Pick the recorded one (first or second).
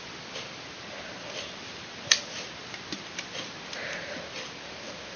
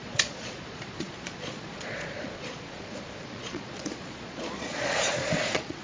first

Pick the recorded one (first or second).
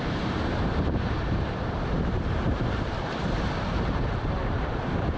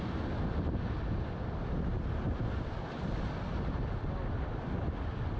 second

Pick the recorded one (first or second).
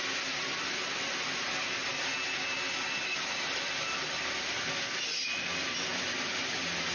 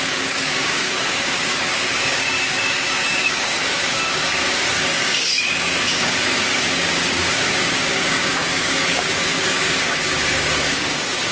first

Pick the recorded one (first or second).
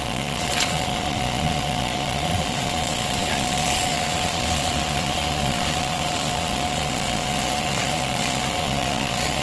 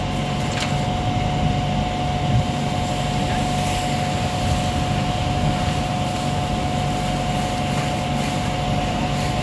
second